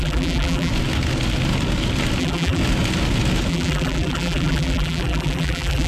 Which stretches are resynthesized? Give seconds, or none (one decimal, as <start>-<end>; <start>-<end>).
0.0-0.7; 2.2-2.6; 3.5-5.9